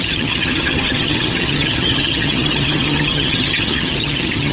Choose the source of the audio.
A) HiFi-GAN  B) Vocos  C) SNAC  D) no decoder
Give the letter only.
A